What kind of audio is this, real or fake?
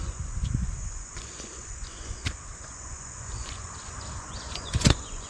fake